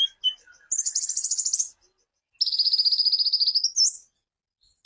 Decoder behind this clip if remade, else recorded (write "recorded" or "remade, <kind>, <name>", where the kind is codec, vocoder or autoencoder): recorded